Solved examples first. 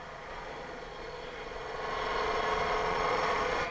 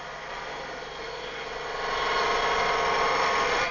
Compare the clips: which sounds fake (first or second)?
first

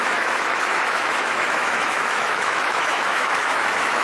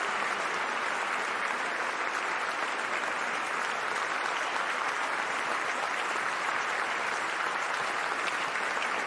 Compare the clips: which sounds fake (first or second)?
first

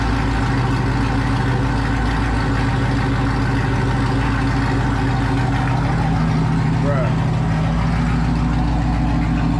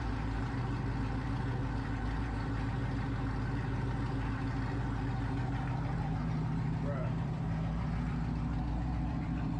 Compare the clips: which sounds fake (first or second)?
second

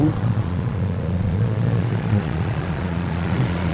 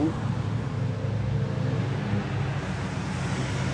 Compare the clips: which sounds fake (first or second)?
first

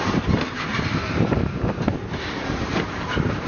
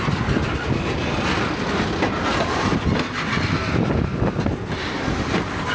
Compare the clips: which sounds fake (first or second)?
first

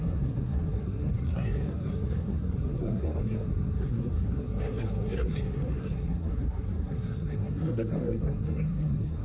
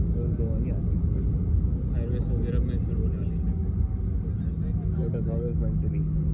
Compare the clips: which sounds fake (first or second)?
first